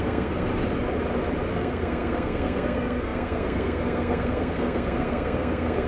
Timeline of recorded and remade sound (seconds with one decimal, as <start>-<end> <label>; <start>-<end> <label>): 0.0-0.5 remade; 0.5-1.5 recorded; 1.5-5.9 remade